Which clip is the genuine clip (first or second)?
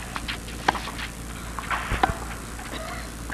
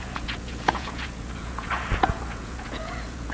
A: first